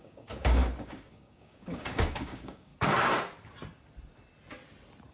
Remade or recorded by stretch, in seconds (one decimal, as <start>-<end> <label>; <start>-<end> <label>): 0.0-2.7 remade; 2.7-5.1 recorded